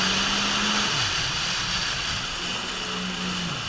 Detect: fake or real real